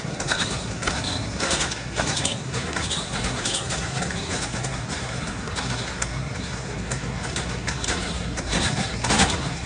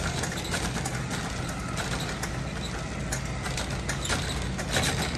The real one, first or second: second